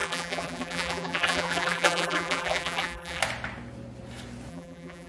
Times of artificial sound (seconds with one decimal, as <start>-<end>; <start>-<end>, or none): 0.0-3.2; 4.5-5.1